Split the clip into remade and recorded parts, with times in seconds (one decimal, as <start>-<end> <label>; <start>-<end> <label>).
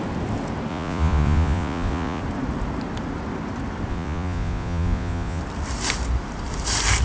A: 0.0-0.7 recorded; 0.7-2.2 remade; 2.2-3.9 recorded; 3.9-5.4 remade; 5.4-7.0 recorded